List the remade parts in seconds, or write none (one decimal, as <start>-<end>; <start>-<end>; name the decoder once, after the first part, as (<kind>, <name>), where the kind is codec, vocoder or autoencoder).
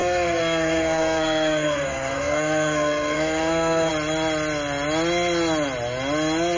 0.0-3.9 (codec, SNAC)